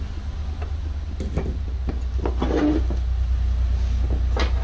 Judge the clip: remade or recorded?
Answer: recorded